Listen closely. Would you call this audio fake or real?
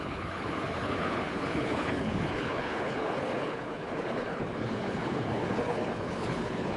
fake